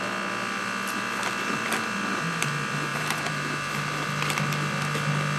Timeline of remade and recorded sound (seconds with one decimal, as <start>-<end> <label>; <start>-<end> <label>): 0.0-2.9 recorded; 2.9-3.7 remade; 3.7-5.4 recorded